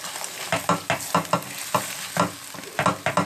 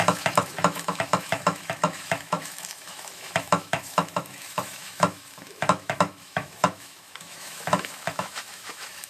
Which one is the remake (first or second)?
second